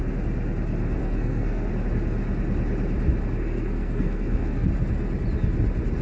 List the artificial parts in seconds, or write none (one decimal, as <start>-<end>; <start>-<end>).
1.0-1.7; 3.4-4.7